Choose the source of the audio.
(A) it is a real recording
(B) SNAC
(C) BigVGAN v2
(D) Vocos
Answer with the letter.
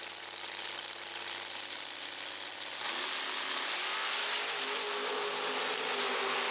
A